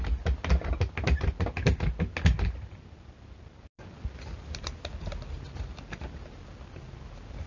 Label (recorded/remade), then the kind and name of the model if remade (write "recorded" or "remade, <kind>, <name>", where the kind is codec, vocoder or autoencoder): recorded